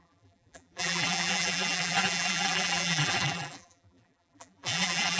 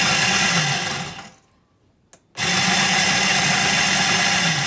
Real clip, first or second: second